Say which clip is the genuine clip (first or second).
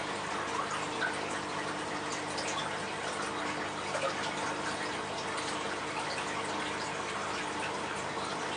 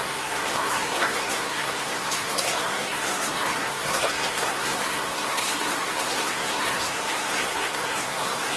first